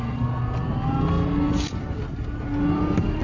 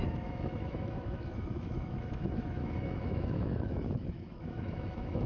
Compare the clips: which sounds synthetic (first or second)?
second